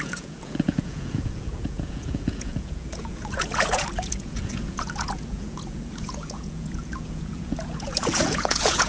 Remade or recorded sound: remade